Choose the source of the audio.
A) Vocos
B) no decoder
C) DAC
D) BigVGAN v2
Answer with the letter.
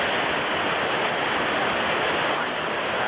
B